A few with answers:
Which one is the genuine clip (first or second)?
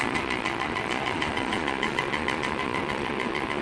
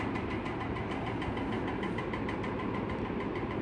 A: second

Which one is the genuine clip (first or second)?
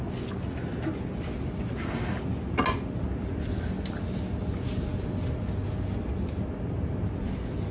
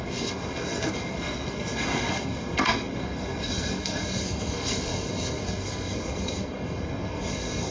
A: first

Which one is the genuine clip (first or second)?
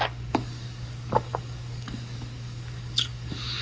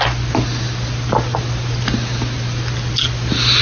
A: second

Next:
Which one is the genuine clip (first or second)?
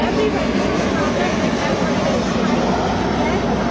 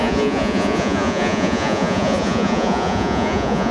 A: first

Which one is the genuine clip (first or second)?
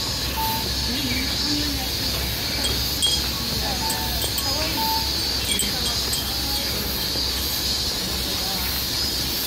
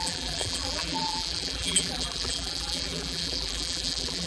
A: first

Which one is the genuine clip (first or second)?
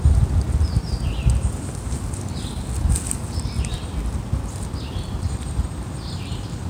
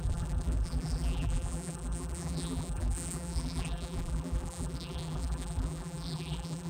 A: first